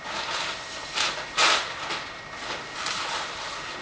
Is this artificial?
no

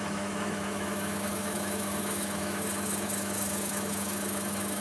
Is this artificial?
yes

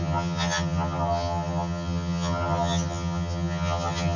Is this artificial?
yes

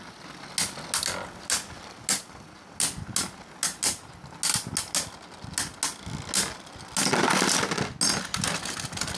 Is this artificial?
no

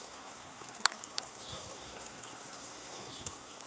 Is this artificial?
yes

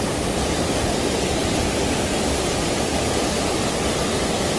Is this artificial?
no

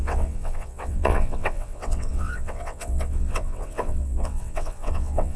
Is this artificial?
yes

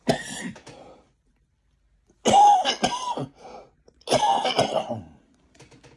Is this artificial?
no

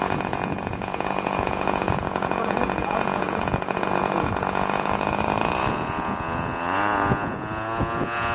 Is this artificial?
yes